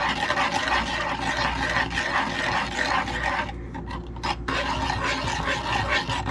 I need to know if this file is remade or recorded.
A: recorded